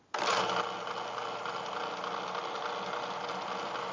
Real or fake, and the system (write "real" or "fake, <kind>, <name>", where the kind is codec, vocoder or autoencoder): real